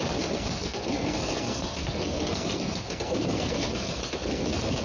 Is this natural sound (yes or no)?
no